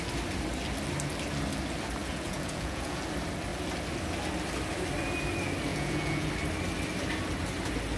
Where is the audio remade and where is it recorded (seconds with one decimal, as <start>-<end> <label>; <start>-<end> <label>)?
0.0-2.0 recorded; 2.0-3.0 remade; 3.0-5.7 recorded; 5.7-6.3 remade; 6.3-8.0 recorded